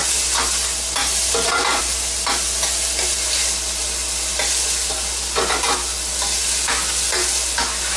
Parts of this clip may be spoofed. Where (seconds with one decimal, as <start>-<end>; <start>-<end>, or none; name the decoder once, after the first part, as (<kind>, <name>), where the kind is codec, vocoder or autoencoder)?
none